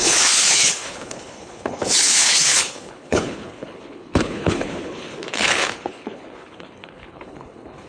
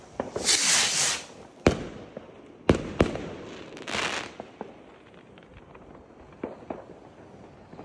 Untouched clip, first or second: second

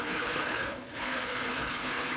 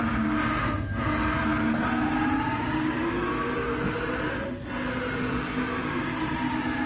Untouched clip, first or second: second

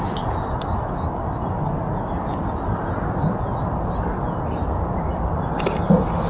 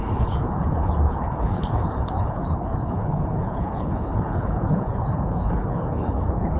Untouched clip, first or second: first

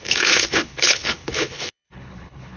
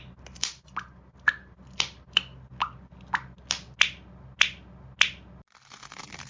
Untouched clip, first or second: second